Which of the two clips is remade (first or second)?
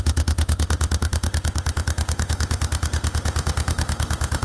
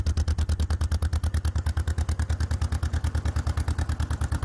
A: first